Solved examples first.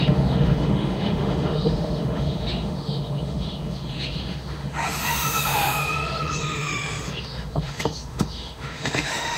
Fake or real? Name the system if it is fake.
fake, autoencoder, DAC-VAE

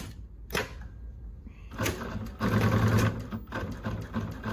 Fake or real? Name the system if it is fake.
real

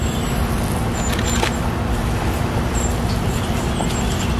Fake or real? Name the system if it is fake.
real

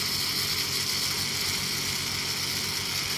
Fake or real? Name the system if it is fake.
real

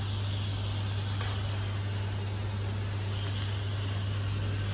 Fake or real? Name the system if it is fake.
real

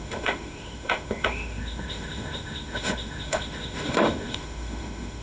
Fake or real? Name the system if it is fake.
fake, autoencoder, DAC-VAE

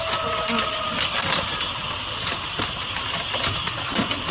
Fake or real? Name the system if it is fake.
real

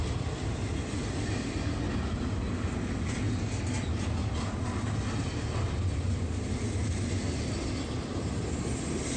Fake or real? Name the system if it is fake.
real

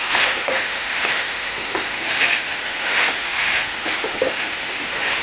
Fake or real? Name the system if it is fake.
fake, autoencoder, DAC-VAE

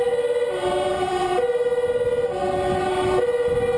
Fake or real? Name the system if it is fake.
real